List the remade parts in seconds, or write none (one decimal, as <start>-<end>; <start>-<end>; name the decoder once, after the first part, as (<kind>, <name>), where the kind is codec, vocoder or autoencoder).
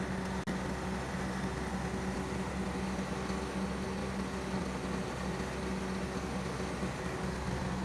none